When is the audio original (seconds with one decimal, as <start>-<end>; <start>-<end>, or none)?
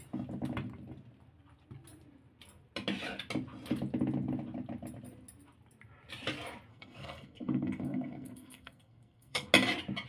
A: 0.0-6.7; 9.5-10.1